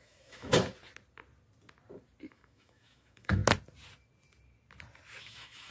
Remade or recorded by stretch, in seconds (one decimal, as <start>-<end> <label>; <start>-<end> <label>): 0.0-0.5 remade; 0.5-2.3 recorded; 2.3-3.4 remade; 3.4-5.2 recorded; 5.2-5.7 remade